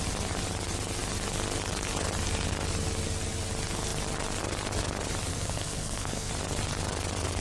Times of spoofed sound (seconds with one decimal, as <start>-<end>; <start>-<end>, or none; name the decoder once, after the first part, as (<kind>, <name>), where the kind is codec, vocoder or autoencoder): 5.3-6.3 (codec, SNAC)